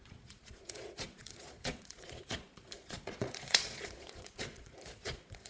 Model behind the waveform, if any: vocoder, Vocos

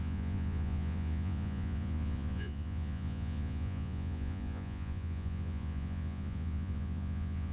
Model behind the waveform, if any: vocoder, Vocos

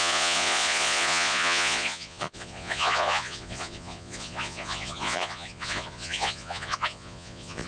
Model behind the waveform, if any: vocoder, Vocos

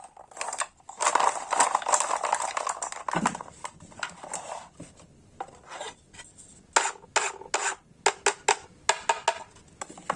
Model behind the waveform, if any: none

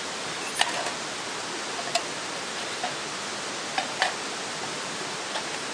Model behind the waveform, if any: none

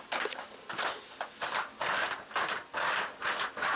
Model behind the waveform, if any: none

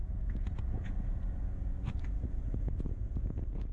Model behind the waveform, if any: vocoder, Vocos